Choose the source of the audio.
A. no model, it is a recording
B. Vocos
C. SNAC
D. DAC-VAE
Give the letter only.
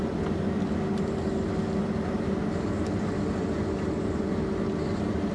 A